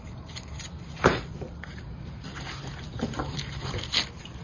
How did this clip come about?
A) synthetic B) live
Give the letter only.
A